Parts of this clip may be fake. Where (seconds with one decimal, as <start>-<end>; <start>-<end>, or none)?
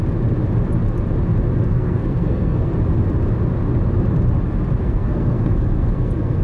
1.7-2.7; 4.8-6.4